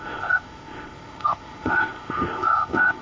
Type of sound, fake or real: fake